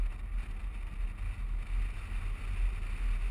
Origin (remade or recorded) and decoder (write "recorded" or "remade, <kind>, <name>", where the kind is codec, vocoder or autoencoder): recorded